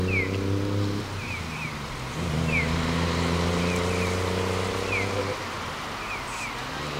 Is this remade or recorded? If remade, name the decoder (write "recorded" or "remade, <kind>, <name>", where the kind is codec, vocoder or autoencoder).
recorded